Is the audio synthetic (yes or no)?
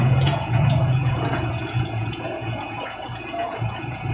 yes